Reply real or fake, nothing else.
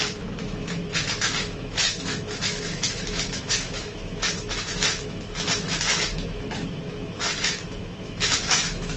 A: fake